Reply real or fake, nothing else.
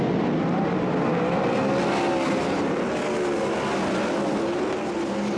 real